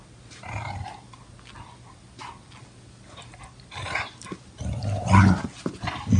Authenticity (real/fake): real